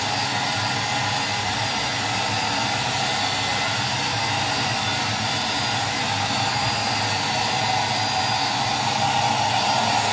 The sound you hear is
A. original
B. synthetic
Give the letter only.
A